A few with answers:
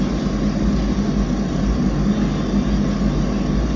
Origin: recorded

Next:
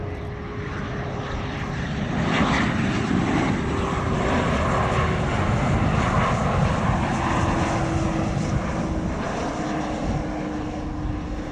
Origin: recorded